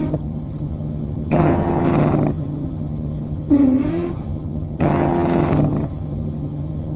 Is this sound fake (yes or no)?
yes